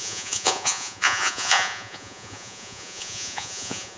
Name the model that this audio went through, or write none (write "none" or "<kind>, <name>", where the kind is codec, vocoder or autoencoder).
vocoder, Vocos